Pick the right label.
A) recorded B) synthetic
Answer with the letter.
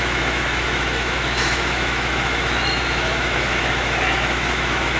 B